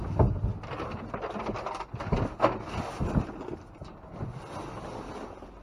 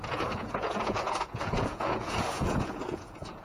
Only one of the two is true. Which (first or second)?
first